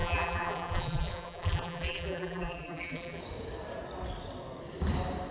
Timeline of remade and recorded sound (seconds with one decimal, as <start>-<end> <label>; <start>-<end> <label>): 0.0-3.2 remade; 3.2-5.3 recorded